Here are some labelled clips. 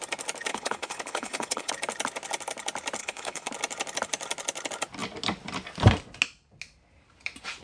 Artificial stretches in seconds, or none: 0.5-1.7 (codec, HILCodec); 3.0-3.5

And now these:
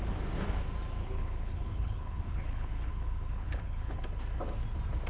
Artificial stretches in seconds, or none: 1.0-4.1 (codec, HILCodec)

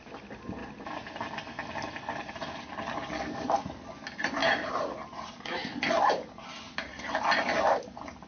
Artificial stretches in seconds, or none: none

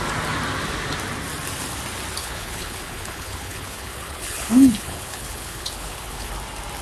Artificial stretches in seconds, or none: 2.2-6.3 (codec, HILCodec)

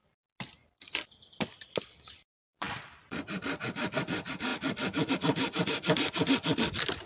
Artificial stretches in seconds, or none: none

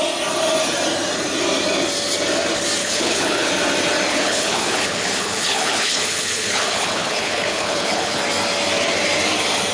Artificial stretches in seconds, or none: 2.8-3.5 (codec, HILCodec); 4.1-8.2

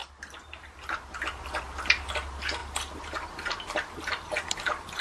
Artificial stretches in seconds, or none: none

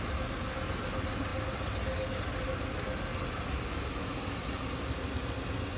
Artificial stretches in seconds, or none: none